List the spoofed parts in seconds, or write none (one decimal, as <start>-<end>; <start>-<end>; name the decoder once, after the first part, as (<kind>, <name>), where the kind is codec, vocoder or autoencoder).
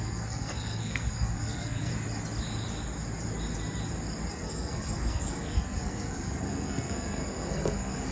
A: 0.0-1.9 (codec, SNAC); 4.3-8.1